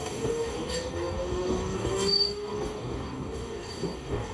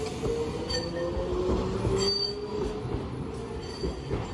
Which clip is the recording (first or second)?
second